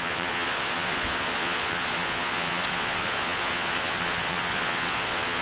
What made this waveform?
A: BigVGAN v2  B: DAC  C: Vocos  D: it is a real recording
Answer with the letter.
C